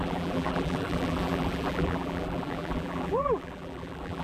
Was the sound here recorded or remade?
remade